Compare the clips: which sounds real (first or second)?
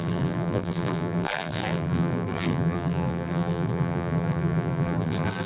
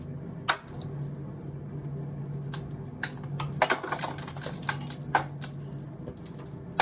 second